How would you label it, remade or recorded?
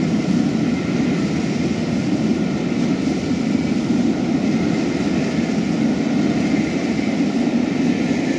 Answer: recorded